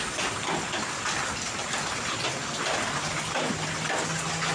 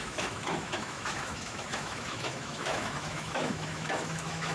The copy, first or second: second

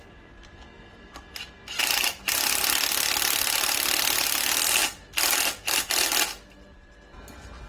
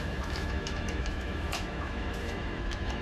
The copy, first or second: second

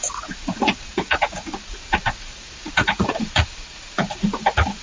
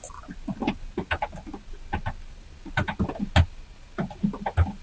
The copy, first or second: first